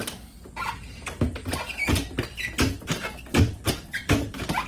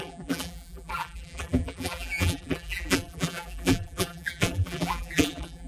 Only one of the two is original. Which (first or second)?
first